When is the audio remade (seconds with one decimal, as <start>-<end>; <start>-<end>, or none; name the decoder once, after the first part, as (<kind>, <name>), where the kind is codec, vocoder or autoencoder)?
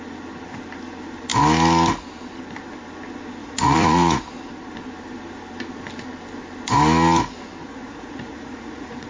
3.4-4.2 (vocoder, Vocos); 7.6-9.1